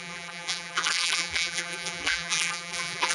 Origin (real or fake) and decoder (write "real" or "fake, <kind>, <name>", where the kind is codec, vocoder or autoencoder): fake, vocoder, BigVGAN v2